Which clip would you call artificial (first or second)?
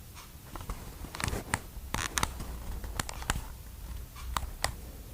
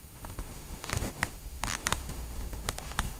second